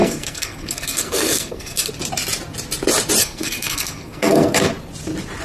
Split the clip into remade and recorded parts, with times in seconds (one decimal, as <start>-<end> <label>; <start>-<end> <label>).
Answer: 0.0-1.9 remade; 1.9-3.2 recorded; 3.2-4.7 remade; 4.7-5.4 recorded

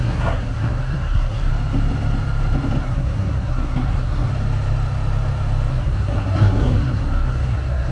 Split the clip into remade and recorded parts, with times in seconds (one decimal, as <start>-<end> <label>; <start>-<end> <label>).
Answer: 0.0-1.5 remade; 1.5-2.8 recorded; 2.8-4.3 remade; 4.3-5.7 recorded; 5.7-7.9 remade

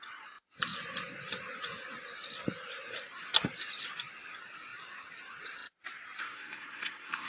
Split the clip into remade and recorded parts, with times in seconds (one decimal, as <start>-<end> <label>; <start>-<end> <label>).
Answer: 0.0-6.2 recorded; 6.2-7.3 remade